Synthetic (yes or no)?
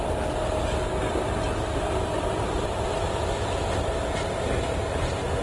no